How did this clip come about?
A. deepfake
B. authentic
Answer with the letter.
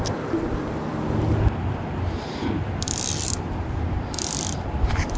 A